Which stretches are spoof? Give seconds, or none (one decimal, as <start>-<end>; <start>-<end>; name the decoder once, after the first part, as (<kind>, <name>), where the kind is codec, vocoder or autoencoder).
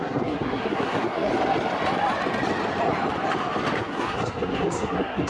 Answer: 0.0-1.3 (codec, SNAC); 3.8-5.3